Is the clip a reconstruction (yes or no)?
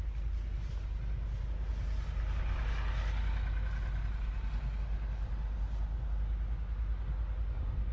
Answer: no